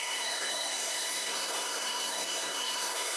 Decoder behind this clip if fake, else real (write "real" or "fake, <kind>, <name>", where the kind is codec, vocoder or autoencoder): fake, codec, SNAC